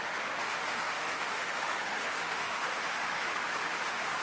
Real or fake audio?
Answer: fake